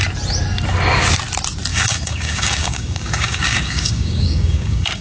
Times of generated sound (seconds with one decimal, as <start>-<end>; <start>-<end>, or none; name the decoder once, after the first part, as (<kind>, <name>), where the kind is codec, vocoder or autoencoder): 1.7-5.0 (codec, DAC)